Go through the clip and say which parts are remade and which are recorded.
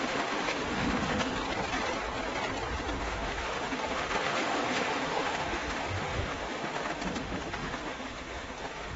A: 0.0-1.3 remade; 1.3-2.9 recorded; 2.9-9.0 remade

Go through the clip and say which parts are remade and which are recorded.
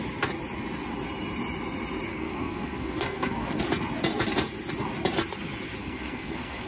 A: 0.0-2.1 recorded; 2.1-3.6 remade; 3.6-5.8 recorded; 5.8-6.7 remade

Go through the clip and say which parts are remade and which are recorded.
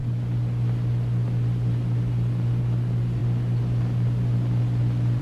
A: 0.0-5.2 recorded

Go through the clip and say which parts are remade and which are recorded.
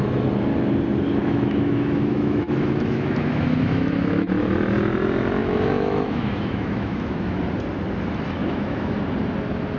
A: 0.0-1.2 recorded; 1.2-4.3 remade; 4.3-5.4 recorded; 5.4-7.4 remade; 7.4-8.4 recorded; 8.4-9.0 remade; 9.0-9.8 recorded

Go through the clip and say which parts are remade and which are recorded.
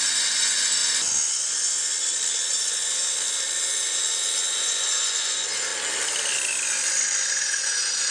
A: 0.0-0.8 remade; 0.8-2.6 recorded; 2.6-3.0 remade; 3.0-4.5 recorded; 4.5-5.7 remade; 5.7-7.4 recorded; 7.4-8.1 remade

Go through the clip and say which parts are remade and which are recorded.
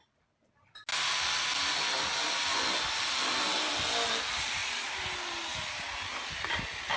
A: 0.0-7.0 recorded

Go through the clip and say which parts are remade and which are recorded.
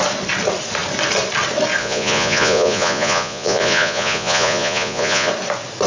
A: 0.0-1.8 recorded; 1.8-5.3 remade; 5.3-5.9 recorded